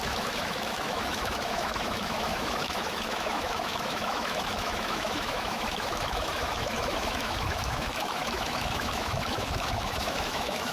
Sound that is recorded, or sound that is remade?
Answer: remade